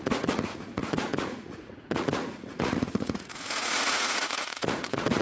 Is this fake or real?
fake